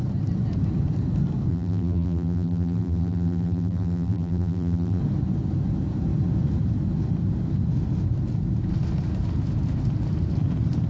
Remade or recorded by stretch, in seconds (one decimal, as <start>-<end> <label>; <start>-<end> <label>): 0.0-1.5 recorded; 1.5-5.0 remade; 5.0-10.9 recorded